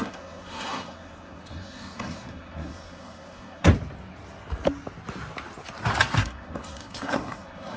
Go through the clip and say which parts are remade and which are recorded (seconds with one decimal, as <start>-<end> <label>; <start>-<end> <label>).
0.0-3.7 remade; 3.7-6.1 recorded; 6.1-7.8 remade

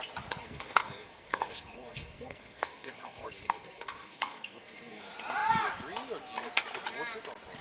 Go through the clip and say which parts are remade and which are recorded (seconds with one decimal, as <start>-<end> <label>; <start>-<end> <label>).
0.0-0.4 recorded; 0.4-5.0 remade; 5.0-7.6 recorded